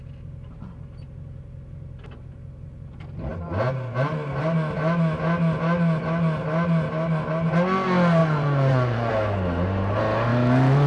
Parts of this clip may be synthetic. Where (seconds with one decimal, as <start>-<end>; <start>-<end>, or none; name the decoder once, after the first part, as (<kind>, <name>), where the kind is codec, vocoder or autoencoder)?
8.2-9.1 (vocoder, Vocos)